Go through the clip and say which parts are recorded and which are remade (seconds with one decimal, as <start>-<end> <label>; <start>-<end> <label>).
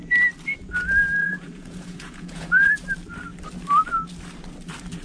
0.0-1.2 recorded; 1.2-2.7 remade; 2.7-5.0 recorded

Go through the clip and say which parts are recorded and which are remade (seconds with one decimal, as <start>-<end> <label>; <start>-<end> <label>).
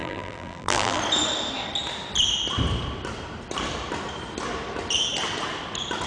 0.0-1.0 remade; 1.0-6.1 recorded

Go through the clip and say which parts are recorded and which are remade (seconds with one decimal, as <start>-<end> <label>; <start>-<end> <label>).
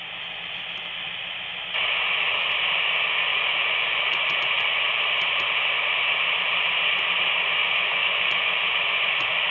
0.0-3.3 recorded; 3.3-4.6 remade; 4.6-7.6 recorded; 7.6-9.5 remade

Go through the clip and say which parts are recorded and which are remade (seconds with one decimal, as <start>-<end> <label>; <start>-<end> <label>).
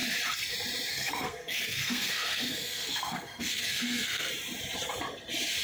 0.0-0.9 recorded; 0.9-4.3 remade; 4.3-5.6 recorded